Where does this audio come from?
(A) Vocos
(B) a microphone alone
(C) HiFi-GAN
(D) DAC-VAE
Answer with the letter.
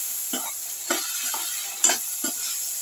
B